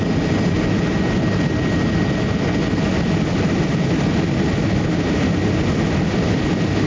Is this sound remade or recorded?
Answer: recorded